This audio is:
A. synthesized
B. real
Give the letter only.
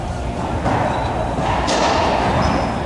A